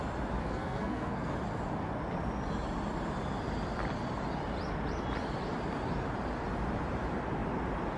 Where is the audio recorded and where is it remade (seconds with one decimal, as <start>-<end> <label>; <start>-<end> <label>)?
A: 0.0-0.4 recorded; 0.4-1.3 remade; 1.3-8.0 recorded